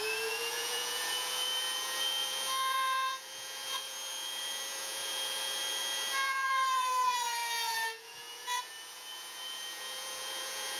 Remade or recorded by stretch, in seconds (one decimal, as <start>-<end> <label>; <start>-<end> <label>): 0.0-10.8 remade

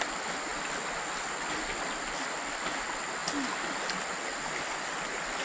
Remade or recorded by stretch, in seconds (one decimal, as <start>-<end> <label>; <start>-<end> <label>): 0.0-5.4 recorded

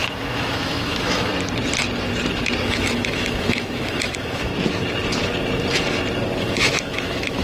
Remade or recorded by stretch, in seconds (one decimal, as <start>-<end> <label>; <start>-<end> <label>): 0.0-1.3 remade; 1.3-2.6 recorded; 2.6-4.5 remade; 4.5-6.4 recorded; 6.4-7.4 remade